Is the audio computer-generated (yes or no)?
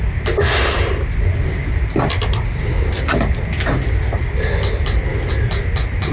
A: no